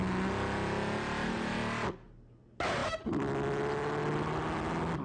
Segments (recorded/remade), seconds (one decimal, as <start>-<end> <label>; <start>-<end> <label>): 0.0-5.0 recorded